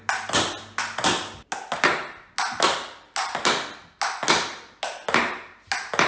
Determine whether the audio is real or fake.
real